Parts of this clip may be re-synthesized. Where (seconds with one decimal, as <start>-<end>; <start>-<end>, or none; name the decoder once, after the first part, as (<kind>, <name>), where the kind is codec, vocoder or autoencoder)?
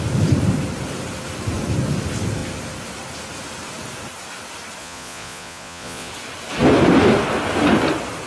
4.8-6.1 (vocoder, Vocos)